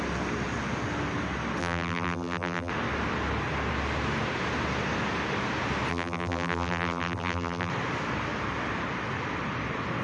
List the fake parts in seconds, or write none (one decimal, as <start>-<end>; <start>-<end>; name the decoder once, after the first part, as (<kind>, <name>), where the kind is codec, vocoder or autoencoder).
1.6-2.7 (vocoder, BigVGAN v2); 5.9-7.7